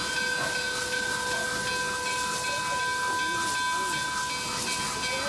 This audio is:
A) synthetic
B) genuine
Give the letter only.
B